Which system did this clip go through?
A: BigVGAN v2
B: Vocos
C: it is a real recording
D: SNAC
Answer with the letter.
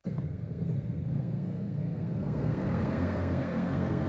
D